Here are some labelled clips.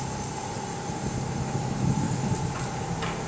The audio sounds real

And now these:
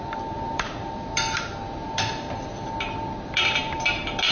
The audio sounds fake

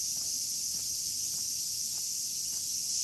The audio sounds real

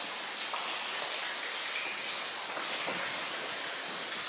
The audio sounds real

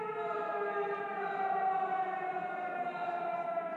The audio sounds real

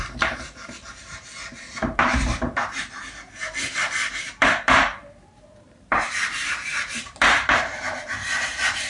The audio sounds fake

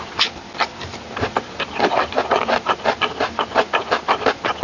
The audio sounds real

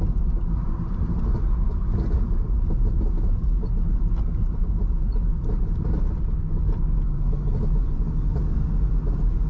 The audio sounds real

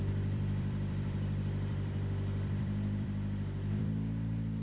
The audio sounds fake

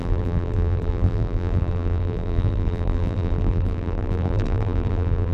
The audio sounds fake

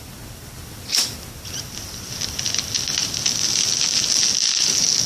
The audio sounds real